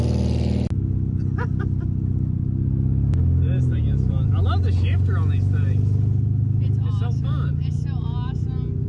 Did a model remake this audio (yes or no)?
no